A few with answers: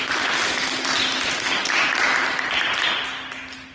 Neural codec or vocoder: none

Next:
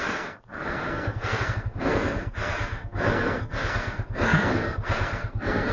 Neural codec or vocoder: codec, SNAC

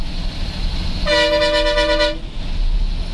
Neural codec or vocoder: none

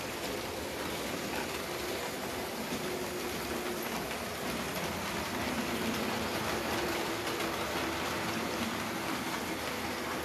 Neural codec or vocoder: none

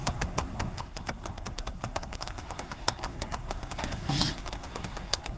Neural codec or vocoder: codec, SNAC